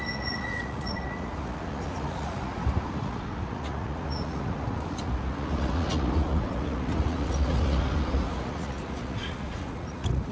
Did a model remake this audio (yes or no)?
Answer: yes